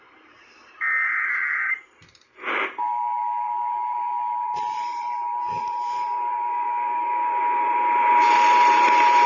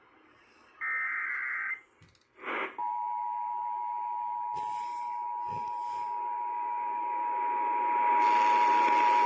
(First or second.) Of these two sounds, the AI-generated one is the first